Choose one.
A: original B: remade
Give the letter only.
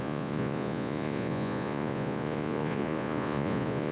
B